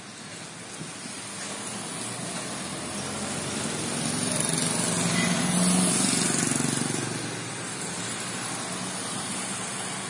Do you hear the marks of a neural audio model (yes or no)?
no